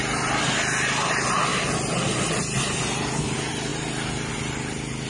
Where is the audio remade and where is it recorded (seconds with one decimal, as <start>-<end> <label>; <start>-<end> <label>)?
0.0-5.1 recorded

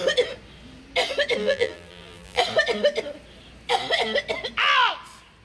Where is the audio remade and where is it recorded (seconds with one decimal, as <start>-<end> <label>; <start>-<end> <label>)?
0.0-1.4 recorded; 1.4-2.4 remade; 2.4-5.4 recorded

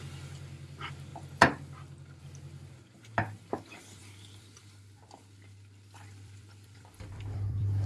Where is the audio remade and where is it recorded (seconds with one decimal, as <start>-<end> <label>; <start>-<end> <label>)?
0.0-4.0 recorded; 4.0-7.9 remade

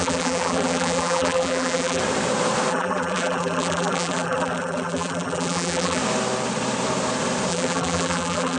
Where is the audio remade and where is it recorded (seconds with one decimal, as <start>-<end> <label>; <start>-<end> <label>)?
0.0-2.0 remade; 2.0-2.7 recorded; 2.7-6.0 remade; 6.0-7.5 recorded; 7.5-8.6 remade

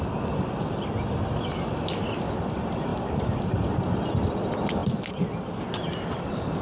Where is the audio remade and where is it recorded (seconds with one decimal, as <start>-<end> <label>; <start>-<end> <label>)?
0.0-2.9 recorded; 2.9-3.7 remade; 3.7-6.6 recorded

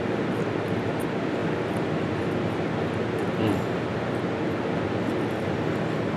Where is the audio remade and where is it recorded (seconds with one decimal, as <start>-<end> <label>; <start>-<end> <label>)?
0.0-6.2 recorded

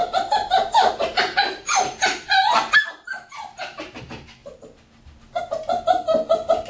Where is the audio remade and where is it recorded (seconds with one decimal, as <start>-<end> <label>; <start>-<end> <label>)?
0.0-4.0 remade; 4.0-6.7 recorded